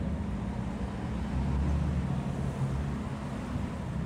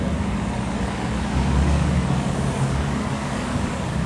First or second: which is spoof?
second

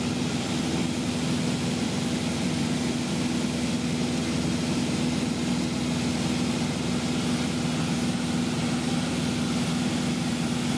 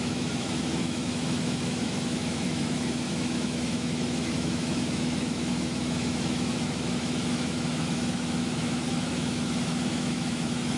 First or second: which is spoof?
second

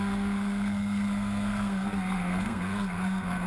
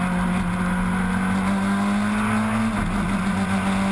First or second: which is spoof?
first